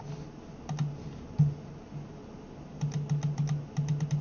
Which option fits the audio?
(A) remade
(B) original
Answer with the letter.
B